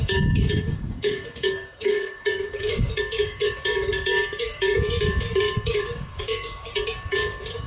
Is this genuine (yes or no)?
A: no